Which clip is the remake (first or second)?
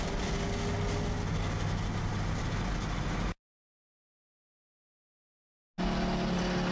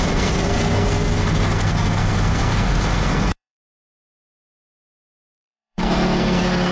second